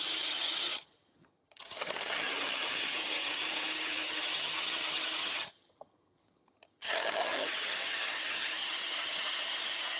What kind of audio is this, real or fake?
fake